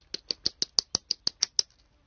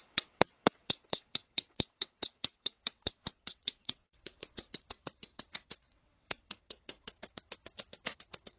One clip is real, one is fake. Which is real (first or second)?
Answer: first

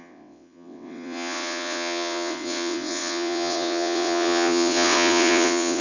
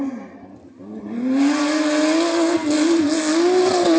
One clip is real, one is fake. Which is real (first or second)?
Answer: second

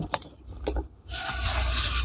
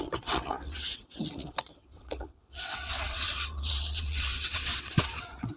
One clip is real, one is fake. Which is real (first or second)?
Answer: first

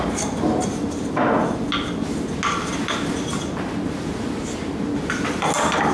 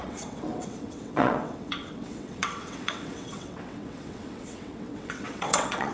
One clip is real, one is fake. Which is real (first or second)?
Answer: first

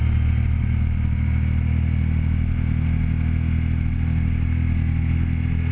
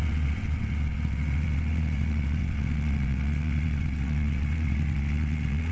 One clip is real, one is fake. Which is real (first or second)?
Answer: first